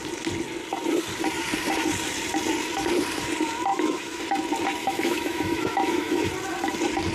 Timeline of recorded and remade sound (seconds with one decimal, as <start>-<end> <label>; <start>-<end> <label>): 0.0-3.7 recorded; 3.7-4.2 remade; 4.2-4.8 recorded; 4.8-6.3 remade; 6.3-7.1 recorded